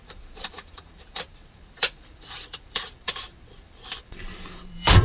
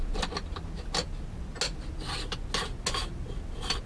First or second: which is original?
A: second